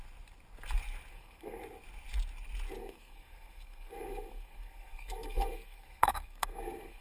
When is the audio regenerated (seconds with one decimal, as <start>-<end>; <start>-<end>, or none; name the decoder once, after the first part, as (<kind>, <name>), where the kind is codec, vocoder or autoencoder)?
1.1-1.6 (codec, SNAC); 2.8-7.0